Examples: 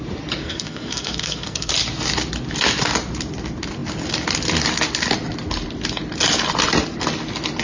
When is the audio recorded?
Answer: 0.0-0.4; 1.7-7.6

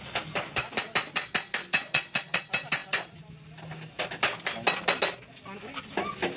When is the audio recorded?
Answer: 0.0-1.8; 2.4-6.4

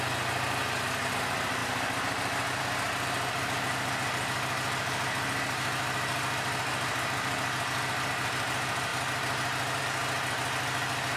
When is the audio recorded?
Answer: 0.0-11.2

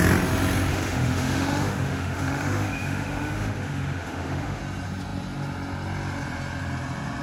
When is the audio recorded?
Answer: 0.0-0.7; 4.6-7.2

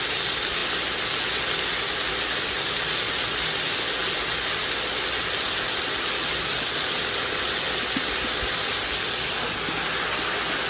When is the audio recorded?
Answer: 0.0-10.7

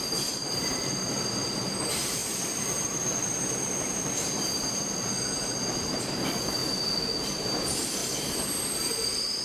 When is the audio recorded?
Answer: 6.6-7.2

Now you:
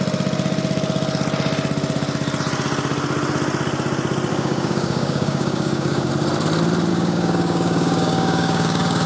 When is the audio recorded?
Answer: 0.0-4.3; 6.1-6.9

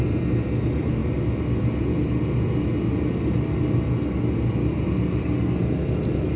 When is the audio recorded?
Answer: 0.0-6.4